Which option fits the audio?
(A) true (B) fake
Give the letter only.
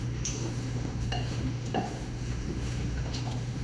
B